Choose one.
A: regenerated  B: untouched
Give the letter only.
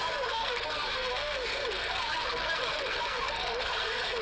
A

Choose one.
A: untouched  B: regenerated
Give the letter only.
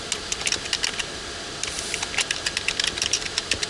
A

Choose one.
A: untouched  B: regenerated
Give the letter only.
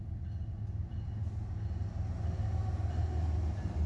A